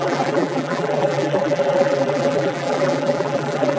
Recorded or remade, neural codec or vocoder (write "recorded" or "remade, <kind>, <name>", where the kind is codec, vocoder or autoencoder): remade, vocoder, BigVGAN v2